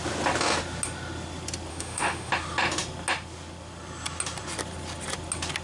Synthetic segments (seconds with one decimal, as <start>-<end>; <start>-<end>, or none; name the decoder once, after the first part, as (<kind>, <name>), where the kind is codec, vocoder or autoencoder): 1.7-2.3 (autoencoder, DAC-VAE)